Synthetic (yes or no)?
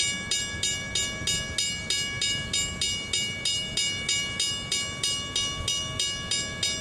no